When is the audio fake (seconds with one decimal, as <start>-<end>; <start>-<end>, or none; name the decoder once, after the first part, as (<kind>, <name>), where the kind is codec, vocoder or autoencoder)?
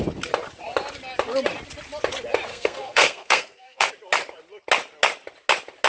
2.5-3.9 (codec, SNAC)